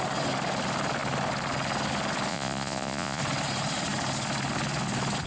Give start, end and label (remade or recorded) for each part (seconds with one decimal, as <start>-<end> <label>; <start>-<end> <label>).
0.0-2.3 recorded; 2.3-3.2 remade; 3.2-5.3 recorded